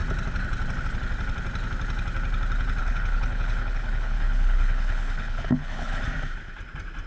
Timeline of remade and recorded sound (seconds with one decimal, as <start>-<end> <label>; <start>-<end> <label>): 0.0-2.8 recorded; 2.8-6.0 remade; 6.0-7.1 recorded